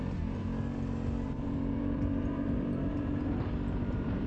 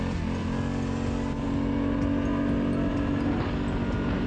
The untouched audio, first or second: second